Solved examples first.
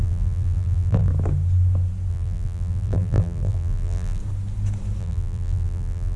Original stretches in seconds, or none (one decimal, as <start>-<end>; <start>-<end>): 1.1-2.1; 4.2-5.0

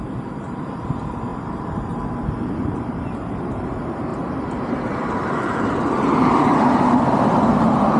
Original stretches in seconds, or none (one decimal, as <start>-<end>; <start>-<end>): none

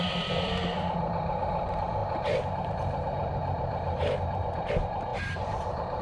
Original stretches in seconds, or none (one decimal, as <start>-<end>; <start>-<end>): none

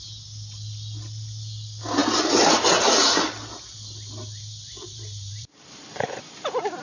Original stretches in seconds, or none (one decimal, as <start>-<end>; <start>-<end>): 0.0-4.7

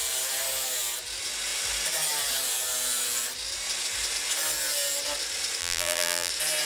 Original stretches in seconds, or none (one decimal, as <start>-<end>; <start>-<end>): 0.0-5.6; 6.3-6.7

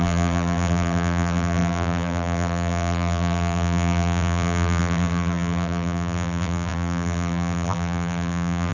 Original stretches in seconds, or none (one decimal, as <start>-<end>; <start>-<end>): none

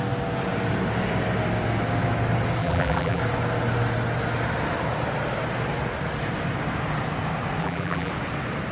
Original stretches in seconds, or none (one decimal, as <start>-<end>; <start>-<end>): 0.0-2.6; 3.2-7.6; 8.1-8.7